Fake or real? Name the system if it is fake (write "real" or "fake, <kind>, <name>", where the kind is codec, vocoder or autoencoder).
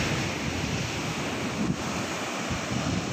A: real